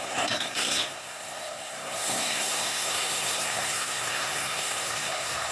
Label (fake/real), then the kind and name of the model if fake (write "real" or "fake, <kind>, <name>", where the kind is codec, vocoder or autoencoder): fake, codec, SNAC